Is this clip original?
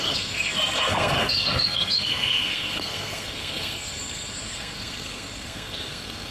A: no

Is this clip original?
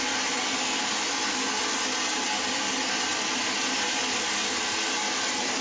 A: yes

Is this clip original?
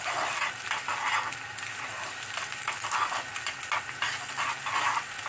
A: yes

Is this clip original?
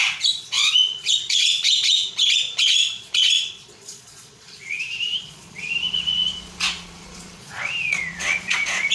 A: no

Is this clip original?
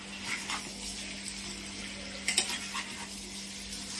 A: yes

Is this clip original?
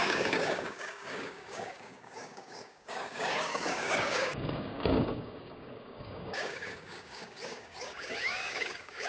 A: no